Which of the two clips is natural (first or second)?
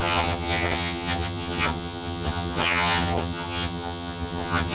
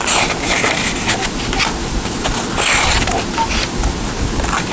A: second